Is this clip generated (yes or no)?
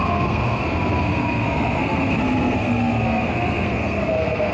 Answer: yes